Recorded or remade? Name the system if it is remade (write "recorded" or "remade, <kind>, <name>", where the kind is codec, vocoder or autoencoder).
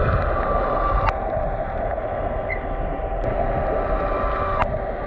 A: recorded